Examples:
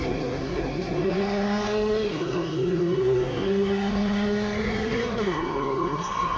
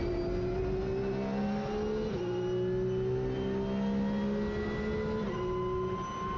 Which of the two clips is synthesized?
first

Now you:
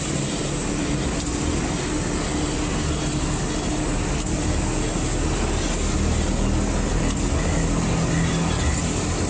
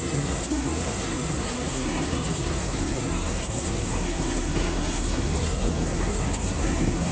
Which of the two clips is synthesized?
second